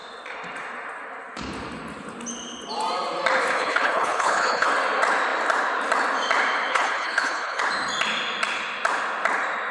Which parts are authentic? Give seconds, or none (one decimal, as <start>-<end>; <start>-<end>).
0.0-3.5; 4.7-6.7; 7.6-9.7